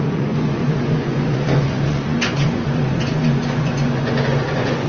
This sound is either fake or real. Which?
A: fake